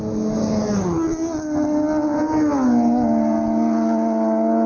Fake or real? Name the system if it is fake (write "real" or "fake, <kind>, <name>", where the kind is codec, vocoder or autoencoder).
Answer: real